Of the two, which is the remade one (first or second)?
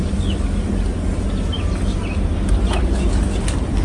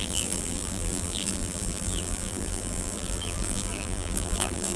second